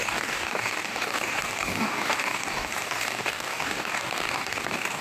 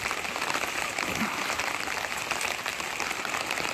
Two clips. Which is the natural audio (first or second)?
second